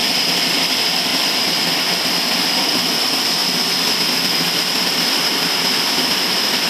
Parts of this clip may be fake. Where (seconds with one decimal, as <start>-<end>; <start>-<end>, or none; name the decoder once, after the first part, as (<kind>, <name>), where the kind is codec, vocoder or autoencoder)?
0.0-1.1 (vocoder, BigVGAN v2); 2.4-3.4; 4.3-6.7